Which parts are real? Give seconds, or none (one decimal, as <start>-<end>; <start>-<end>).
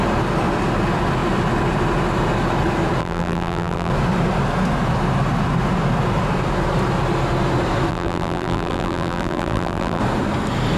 0.0-3.0; 3.9-7.9; 10.0-10.8